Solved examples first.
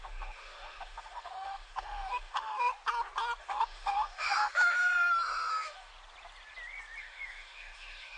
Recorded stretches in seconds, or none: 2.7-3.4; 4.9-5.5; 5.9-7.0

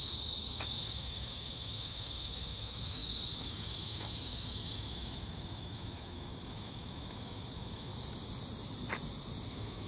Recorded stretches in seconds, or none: 7.9-9.5

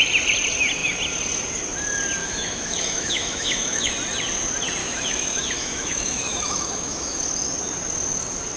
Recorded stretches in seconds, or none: 0.0-2.2; 3.9-4.8; 7.2-8.6

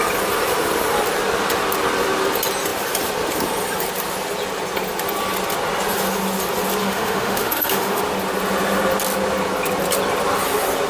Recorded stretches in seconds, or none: 0.0-6.8; 8.0-10.9

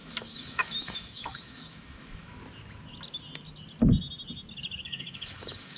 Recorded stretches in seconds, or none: 2.4-4.8

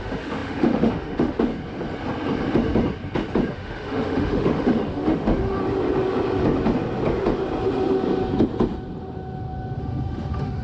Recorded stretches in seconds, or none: 1.5-3.5; 5.6-9.8

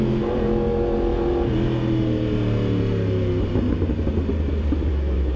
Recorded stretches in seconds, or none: 0.0-4.9